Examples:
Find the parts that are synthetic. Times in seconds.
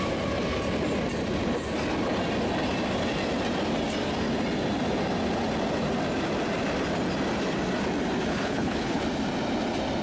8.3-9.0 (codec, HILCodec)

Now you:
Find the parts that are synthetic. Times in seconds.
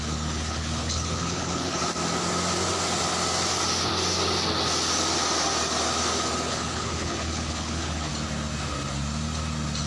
0.0-1.8 (codec, HILCodec); 6.5-8.1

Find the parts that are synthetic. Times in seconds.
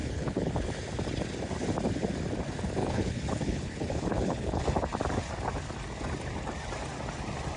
0.0-0.5 (codec, HILCodec); 2.8-4.6